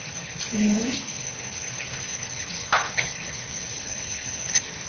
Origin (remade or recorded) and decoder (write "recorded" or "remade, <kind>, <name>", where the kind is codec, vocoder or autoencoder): remade, codec, HILCodec